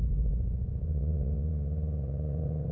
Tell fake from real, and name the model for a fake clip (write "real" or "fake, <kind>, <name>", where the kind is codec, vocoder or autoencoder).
fake, vocoder, Vocos